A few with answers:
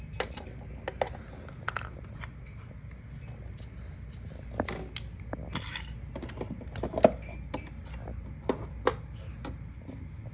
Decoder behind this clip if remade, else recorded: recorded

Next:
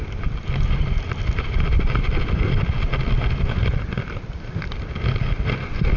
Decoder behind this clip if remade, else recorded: recorded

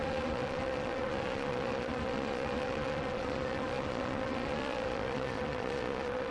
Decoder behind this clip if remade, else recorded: remade, vocoder, Vocos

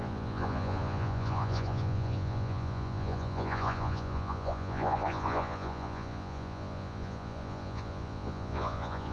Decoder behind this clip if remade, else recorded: remade, vocoder, Vocos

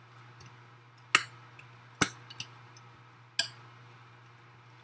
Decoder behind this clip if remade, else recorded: recorded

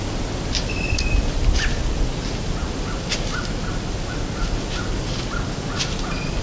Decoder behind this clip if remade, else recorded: recorded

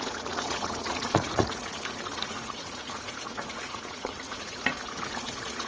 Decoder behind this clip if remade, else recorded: remade, vocoder, Vocos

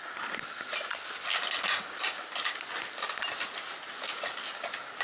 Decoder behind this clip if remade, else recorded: recorded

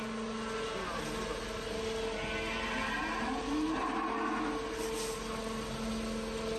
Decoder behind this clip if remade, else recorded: recorded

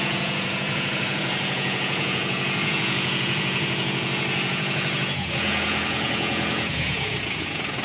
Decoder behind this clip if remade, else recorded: remade, vocoder, Vocos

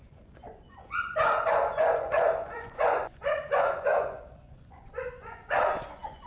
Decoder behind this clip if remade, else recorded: remade, vocoder, Vocos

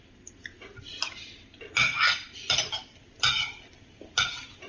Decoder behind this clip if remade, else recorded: recorded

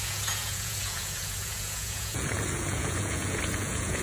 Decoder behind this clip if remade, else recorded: remade, vocoder, Vocos